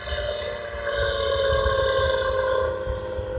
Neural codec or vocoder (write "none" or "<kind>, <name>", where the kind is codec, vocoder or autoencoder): none